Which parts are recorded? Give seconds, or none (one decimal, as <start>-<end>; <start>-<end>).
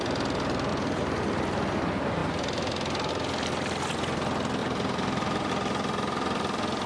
0.0-0.7; 1.2-4.6; 5.5-6.9